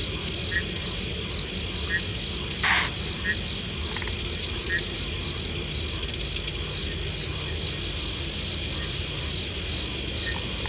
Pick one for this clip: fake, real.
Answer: real